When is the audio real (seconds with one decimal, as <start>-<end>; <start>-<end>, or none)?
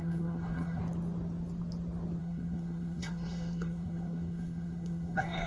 0.8-2.2